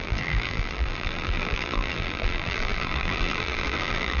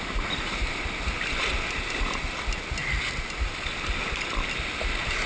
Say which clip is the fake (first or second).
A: first